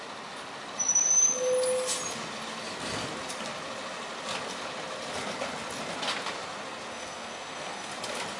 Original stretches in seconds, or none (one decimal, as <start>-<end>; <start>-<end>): 0.0-6.9; 7.9-8.4